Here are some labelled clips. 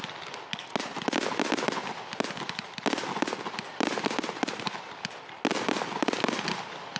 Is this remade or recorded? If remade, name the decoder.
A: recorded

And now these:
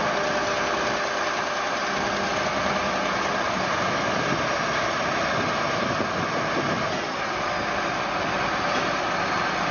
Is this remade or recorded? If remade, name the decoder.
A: recorded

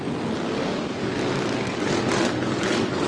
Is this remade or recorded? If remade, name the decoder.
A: recorded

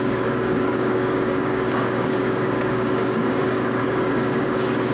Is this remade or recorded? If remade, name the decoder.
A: remade, codec, DAC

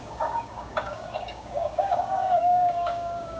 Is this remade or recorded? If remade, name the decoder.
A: remade, codec, DAC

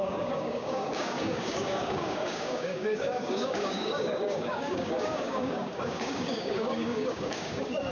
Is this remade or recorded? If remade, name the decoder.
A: remade, codec, DAC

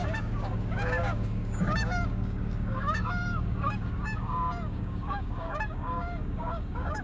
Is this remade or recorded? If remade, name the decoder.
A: remade, codec, DAC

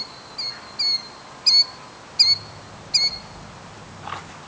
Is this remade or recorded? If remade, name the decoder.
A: recorded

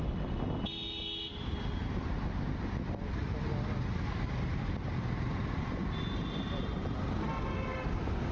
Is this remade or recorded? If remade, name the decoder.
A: recorded